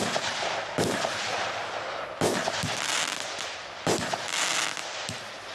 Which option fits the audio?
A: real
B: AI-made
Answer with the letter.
A